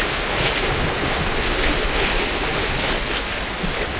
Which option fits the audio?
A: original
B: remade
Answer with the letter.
A